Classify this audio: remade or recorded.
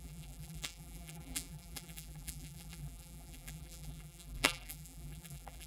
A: remade